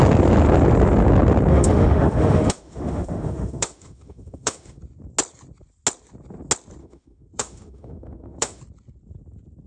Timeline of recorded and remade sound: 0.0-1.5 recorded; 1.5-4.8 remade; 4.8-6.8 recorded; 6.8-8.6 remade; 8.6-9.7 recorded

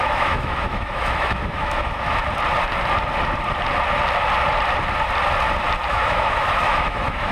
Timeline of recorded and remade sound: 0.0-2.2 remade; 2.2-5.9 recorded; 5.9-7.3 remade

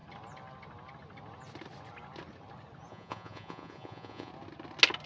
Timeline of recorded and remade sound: 0.0-2.9 recorded; 2.9-4.3 remade; 4.3-5.1 recorded

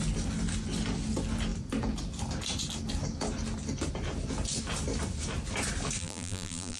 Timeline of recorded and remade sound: 0.0-6.0 recorded; 6.0-6.8 remade

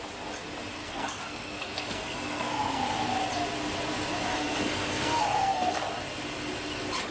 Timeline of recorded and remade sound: 0.0-0.8 recorded; 0.8-2.8 remade; 2.8-4.3 recorded; 4.3-5.9 remade; 5.9-7.1 recorded

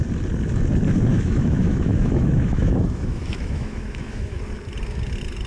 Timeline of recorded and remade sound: 0.0-1.1 recorded; 1.1-4.4 remade; 4.4-5.5 recorded

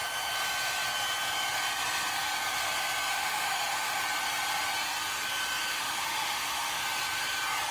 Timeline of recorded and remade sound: 0.0-3.1 recorded; 3.1-4.0 remade; 4.0-5.7 recorded; 5.7-6.8 remade; 6.8-7.7 recorded